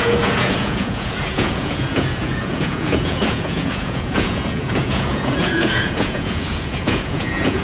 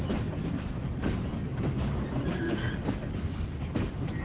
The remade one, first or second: first